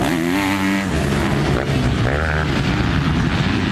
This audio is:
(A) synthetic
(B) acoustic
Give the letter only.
B